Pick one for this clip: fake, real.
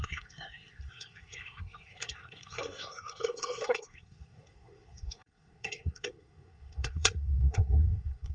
fake